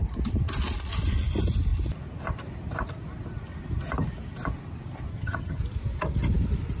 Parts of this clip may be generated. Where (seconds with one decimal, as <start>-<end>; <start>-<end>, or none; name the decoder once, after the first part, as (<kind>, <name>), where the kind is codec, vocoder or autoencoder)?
5.1-5.6 (vocoder, HiFi-GAN)